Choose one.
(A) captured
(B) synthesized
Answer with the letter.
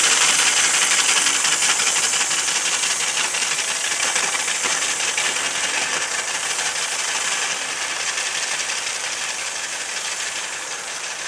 B